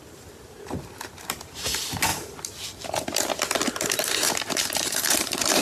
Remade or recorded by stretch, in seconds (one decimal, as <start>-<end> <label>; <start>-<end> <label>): 0.0-2.1 remade; 2.1-4.1 recorded; 4.1-5.6 remade